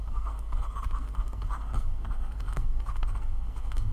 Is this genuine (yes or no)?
no